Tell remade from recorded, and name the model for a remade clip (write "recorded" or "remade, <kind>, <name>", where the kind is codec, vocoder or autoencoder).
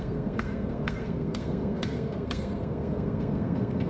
remade, codec, SNAC